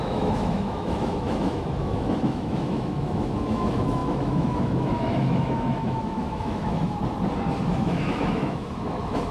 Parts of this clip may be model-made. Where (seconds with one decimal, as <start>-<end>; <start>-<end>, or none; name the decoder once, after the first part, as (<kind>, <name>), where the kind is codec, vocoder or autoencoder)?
0.0-7.0 (autoencoder, DAC-VAE); 7.7-9.3